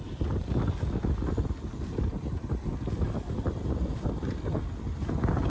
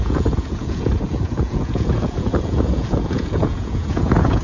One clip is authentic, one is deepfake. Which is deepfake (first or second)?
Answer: second